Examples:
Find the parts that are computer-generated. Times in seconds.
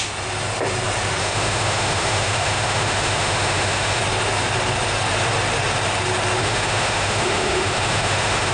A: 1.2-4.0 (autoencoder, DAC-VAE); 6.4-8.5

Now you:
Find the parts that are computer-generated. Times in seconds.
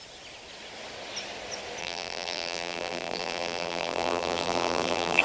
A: 1.8-5.2 (vocoder, BigVGAN v2)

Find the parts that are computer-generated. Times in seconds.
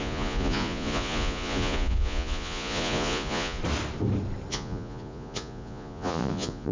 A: 0.0-3.6 (vocoder, Vocos); 4.5-6.7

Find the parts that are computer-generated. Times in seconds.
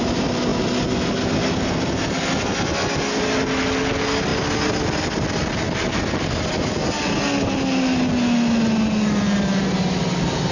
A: none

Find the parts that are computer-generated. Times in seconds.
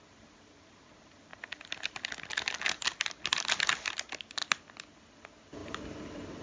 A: 5.6-6.4 (vocoder, BigVGAN v2)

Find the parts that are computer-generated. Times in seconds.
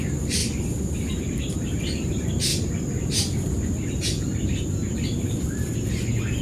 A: 0.0-0.4 (vocoder, BigVGAN v2); 1.4-2.5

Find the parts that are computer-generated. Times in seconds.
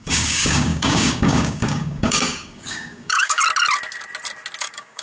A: 0.0-3.4 (codec, DAC); 4.6-5.0